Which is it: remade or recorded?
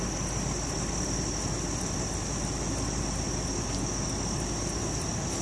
recorded